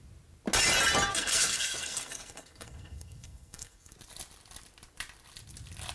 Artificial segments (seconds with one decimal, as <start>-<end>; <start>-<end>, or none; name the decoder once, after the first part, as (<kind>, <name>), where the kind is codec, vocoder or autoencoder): 1.1-3.9 (codec, SNAC)